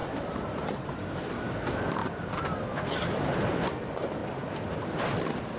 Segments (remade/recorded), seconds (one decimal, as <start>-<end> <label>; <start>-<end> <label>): 0.0-4.2 remade; 4.2-5.6 recorded